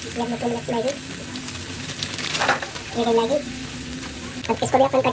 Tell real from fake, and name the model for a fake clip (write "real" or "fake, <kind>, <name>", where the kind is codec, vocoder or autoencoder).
fake, vocoder, BigVGAN v2